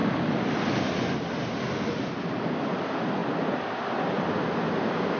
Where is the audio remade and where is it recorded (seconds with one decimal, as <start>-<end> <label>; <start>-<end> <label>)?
0.0-5.2 recorded